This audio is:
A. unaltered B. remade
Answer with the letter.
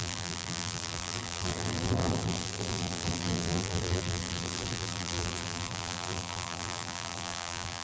B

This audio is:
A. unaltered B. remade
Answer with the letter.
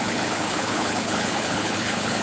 B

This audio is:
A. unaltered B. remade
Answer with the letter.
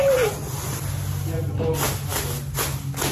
A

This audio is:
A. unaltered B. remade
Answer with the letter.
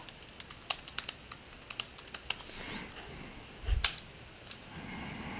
A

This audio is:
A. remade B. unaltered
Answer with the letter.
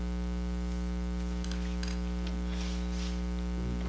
B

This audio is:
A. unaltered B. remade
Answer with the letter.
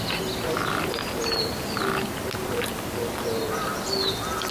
A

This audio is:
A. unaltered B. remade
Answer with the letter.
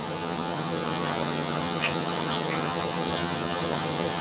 B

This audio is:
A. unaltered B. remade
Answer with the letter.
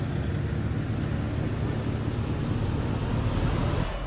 A